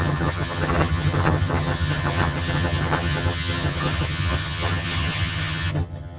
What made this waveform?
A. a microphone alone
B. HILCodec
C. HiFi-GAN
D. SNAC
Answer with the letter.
C